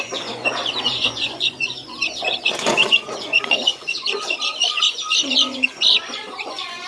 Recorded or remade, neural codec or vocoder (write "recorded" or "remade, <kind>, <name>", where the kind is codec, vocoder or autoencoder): remade, vocoder, Vocos